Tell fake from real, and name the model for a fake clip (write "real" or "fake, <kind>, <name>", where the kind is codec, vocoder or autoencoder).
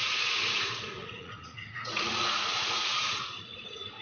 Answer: fake, vocoder, Vocos